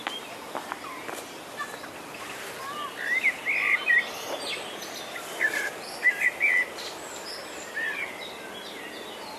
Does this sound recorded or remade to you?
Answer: recorded